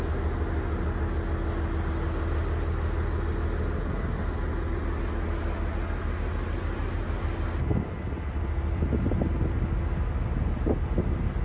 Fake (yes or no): no